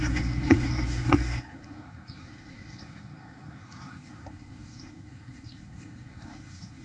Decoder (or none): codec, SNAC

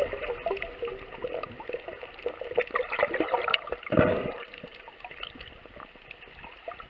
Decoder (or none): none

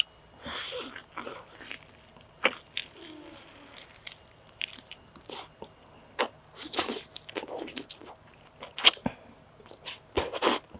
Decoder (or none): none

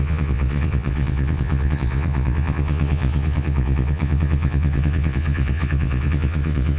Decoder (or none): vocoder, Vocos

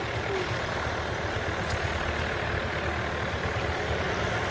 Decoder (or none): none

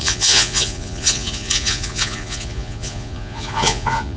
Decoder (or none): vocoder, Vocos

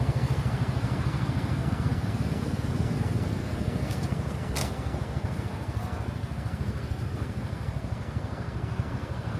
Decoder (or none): codec, SNAC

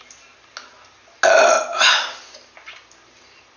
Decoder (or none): none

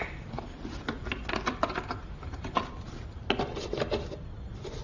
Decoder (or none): none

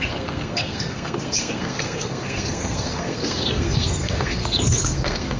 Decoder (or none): codec, SNAC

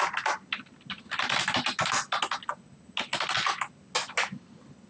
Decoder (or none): none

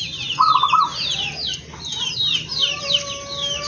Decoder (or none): none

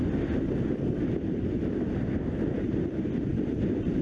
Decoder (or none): none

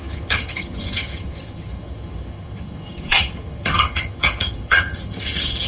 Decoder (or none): vocoder, HiFi-GAN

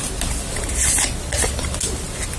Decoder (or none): none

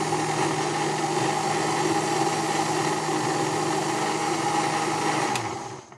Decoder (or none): none